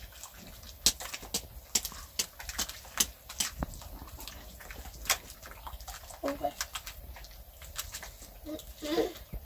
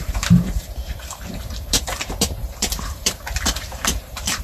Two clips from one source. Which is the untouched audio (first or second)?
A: first